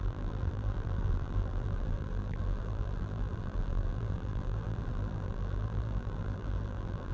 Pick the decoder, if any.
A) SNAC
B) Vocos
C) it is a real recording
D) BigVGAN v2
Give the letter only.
D